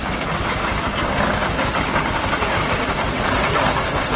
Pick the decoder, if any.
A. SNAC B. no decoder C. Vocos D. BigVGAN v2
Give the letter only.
B